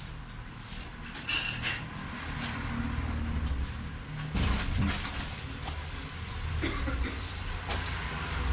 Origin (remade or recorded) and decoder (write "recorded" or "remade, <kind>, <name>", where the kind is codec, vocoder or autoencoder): recorded